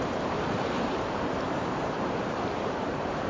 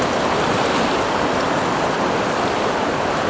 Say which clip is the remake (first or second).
first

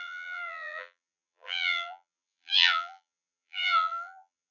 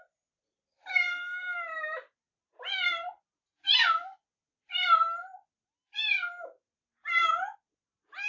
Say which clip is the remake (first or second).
first